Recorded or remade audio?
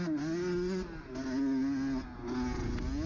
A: recorded